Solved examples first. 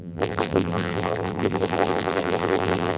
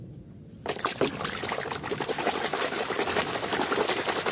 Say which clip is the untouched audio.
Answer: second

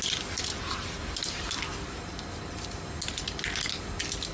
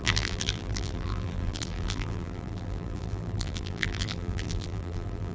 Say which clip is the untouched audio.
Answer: first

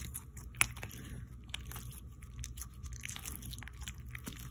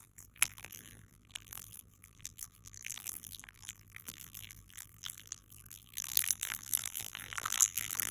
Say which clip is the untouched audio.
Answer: first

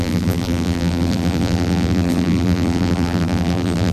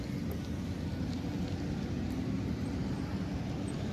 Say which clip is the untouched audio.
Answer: second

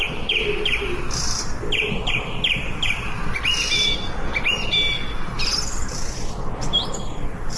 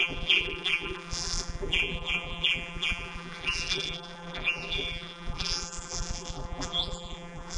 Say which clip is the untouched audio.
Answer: first